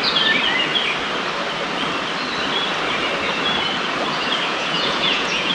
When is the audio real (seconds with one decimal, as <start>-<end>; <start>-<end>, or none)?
0.0-4.5